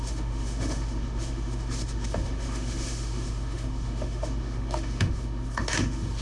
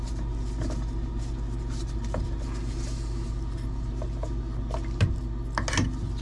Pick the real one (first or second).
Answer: second